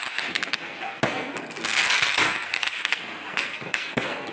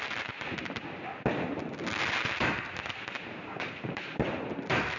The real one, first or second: second